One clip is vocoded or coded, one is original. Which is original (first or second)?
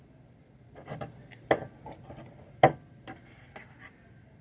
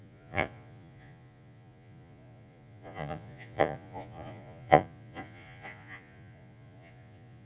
first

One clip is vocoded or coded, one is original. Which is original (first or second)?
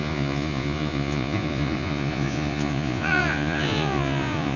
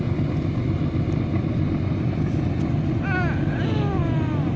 second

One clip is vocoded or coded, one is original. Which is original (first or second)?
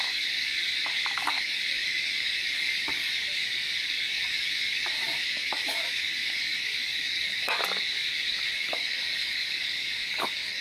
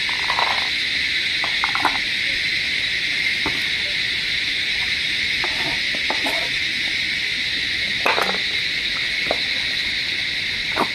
second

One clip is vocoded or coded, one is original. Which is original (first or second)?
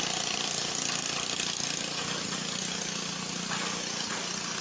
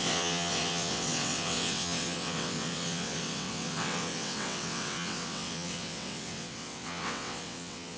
first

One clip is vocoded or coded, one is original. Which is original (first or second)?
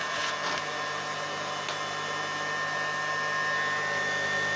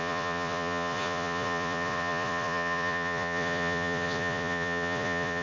first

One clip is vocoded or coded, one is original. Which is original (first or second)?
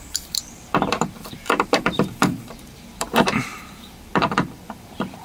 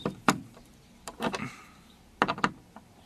second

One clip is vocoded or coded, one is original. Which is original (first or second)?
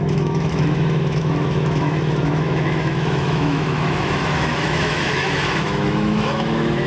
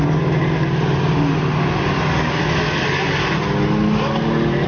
second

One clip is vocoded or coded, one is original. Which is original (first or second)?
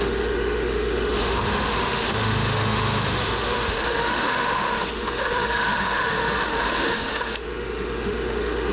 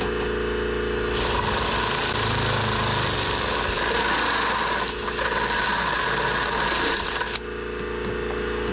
second